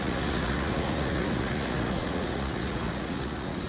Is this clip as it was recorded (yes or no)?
no